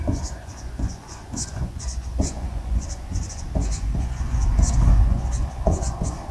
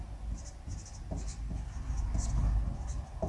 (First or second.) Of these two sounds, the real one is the second